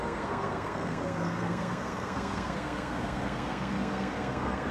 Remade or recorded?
remade